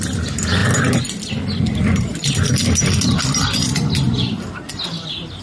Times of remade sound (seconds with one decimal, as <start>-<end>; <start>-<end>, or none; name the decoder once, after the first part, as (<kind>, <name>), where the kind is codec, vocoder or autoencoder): none